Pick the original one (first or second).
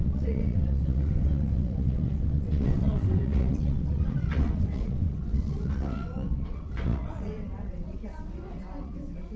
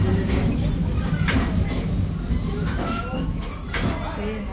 second